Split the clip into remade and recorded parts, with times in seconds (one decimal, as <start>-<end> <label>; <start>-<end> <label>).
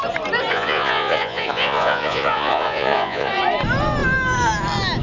0.0-0.5 recorded; 0.5-3.3 remade; 3.3-5.0 recorded